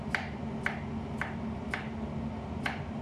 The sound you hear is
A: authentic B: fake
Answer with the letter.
A